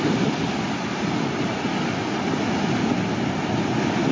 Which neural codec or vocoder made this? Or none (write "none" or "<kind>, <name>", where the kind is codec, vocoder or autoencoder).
none